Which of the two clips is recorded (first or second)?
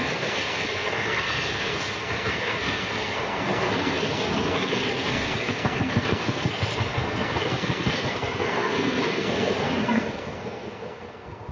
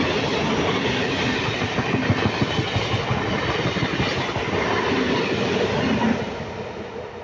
second